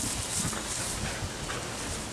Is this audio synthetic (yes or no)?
no